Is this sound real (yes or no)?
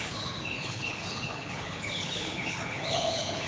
no